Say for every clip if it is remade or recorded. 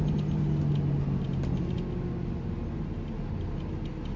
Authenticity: recorded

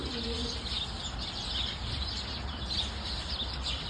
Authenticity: recorded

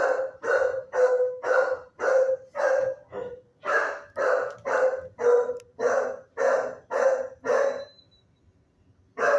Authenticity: recorded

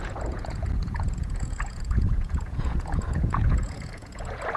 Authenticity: remade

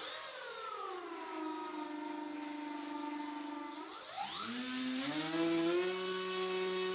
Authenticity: recorded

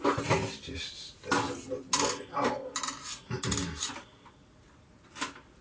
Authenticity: recorded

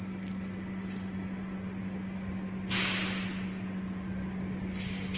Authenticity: recorded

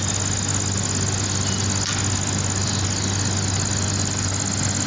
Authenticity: recorded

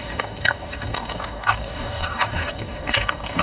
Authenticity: remade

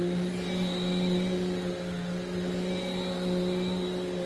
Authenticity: recorded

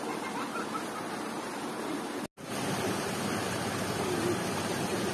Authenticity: recorded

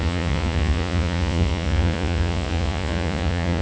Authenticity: remade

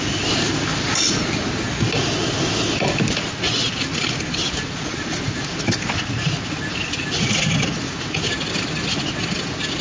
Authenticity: recorded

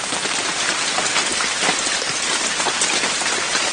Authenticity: recorded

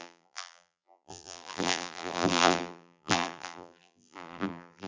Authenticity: remade